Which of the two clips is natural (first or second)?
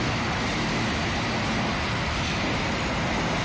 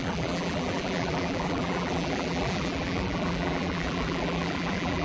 first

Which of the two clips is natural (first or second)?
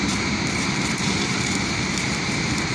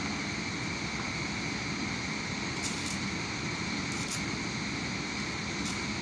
second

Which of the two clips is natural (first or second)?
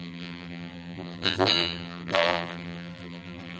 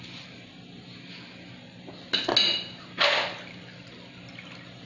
second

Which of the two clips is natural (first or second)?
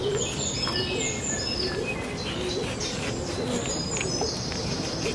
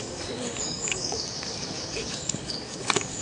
first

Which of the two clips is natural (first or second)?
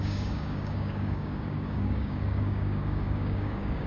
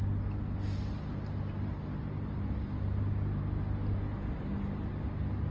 second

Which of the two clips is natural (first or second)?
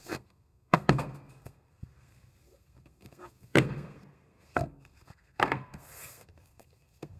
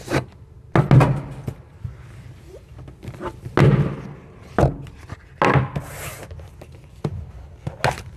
second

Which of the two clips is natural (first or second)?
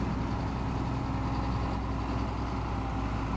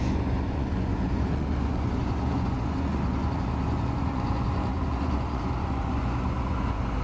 first